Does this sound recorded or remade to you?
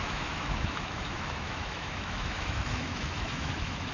remade